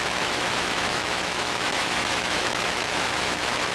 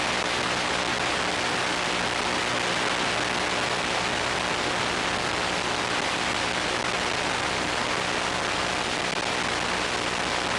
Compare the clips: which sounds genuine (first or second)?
second